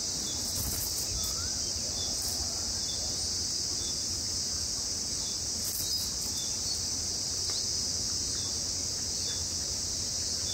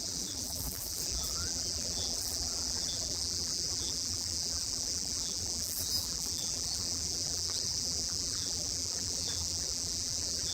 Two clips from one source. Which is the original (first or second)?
first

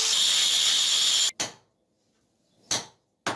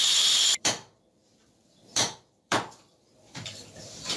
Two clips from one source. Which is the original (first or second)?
first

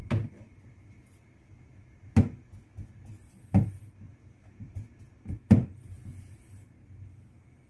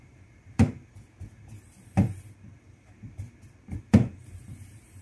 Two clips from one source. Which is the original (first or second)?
first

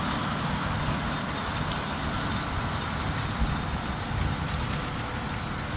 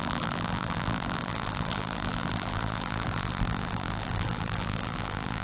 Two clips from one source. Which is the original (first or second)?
first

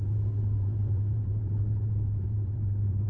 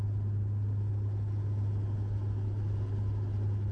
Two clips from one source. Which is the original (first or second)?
second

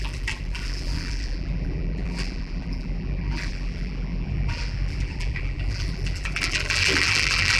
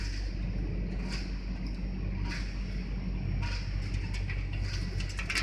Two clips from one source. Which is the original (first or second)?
second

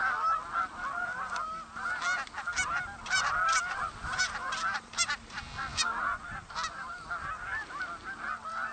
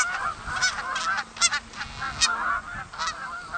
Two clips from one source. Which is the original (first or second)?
second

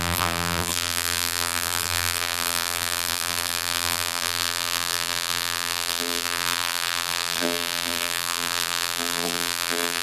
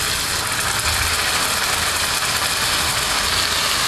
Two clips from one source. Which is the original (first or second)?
second